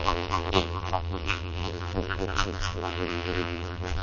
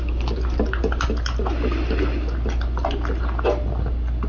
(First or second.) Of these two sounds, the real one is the second